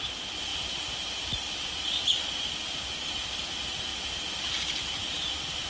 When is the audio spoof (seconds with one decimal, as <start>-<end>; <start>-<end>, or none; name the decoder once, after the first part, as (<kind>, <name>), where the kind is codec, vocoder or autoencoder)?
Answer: none